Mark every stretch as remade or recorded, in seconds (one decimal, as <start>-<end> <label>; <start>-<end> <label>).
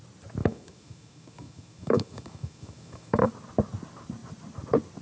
0.0-0.4 recorded; 0.4-3.3 remade; 3.3-5.0 recorded